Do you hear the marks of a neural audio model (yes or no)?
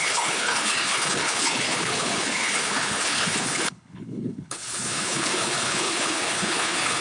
yes